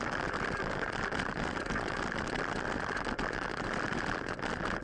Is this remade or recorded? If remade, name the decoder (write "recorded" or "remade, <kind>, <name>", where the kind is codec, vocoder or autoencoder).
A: recorded